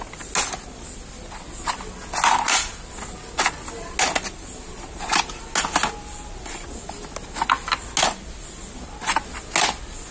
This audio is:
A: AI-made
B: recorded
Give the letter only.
B